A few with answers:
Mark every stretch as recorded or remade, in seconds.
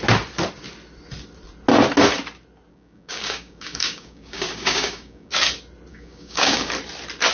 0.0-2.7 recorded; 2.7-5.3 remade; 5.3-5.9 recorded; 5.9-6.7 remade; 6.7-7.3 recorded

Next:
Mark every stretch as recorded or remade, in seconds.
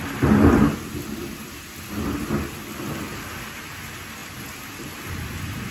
0.0-5.7 recorded